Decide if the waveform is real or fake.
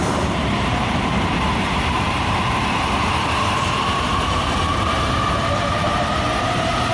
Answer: fake